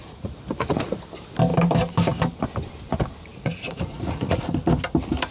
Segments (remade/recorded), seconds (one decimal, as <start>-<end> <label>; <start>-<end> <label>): 0.0-1.0 remade; 1.0-3.3 recorded; 3.3-4.4 remade; 4.4-5.3 recorded